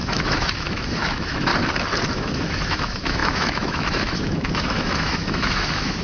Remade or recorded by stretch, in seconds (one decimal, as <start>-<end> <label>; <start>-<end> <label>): 0.0-1.5 remade; 1.5-2.1 recorded; 2.1-6.0 remade